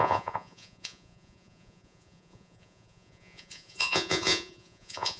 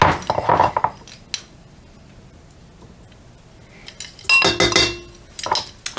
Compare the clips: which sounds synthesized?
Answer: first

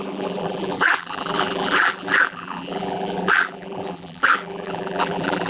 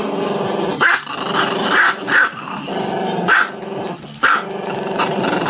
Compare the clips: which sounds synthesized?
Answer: first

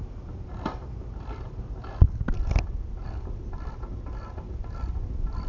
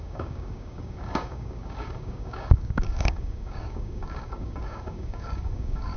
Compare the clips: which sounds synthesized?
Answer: second